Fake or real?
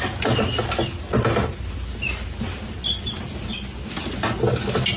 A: real